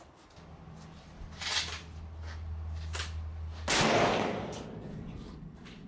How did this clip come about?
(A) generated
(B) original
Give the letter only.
B